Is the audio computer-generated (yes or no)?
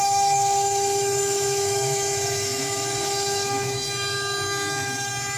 yes